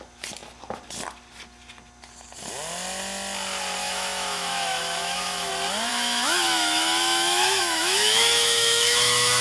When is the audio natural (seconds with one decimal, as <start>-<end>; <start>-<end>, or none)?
0.0-3.8; 5.5-5.9